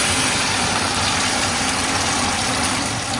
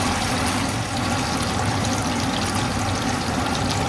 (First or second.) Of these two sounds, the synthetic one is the first